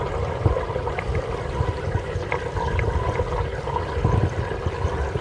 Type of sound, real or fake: real